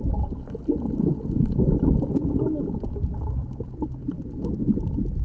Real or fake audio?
real